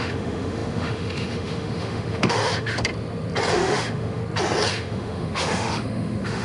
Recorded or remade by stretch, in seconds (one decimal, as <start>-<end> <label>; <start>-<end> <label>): 0.0-2.9 remade; 2.9-3.5 recorded; 3.5-4.2 remade; 4.2-4.7 recorded; 4.7-6.4 remade